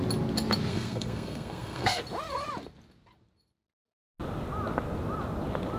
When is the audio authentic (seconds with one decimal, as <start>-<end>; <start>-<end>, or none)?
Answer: 0.0-0.7; 2.0-5.8

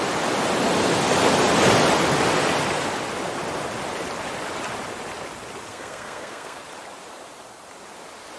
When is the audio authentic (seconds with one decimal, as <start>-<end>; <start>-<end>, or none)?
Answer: 0.0-5.7; 6.6-8.4

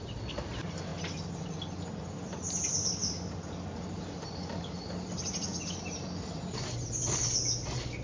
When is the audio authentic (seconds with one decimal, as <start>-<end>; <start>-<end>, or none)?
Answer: 0.0-8.0

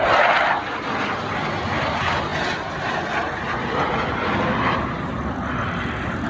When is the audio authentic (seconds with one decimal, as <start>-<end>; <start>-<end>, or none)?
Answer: 0.0-6.3

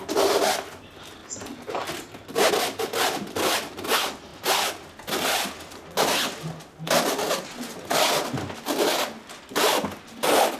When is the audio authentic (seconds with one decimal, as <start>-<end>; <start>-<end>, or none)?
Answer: 0.0-10.6

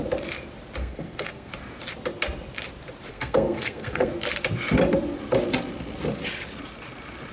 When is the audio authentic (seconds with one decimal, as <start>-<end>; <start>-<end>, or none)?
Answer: 0.0-0.8; 1.5-3.1; 4.1-7.3

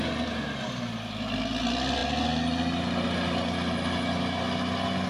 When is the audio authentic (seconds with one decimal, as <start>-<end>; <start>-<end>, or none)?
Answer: 0.0-5.1